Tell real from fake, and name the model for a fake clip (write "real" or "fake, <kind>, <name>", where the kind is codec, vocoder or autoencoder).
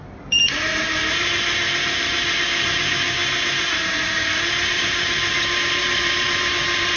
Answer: fake, vocoder, BigVGAN v2